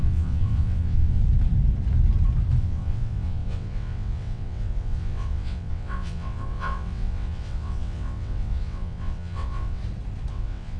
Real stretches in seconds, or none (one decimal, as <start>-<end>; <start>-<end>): 1.2-2.6; 9.8-10.3